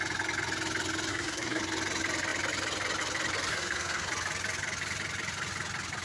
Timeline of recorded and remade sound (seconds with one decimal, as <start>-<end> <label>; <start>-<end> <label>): 0.0-1.1 recorded; 1.1-1.6 remade; 1.6-3.5 recorded; 3.5-4.1 remade; 4.1-6.0 recorded